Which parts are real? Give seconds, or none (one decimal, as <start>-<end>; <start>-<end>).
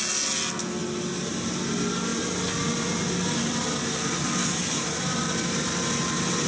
0.0-6.5